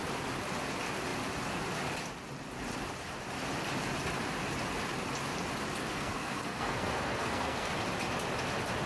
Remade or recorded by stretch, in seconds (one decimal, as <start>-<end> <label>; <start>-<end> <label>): 0.0-5.8 recorded; 5.8-7.7 remade; 7.7-8.9 recorded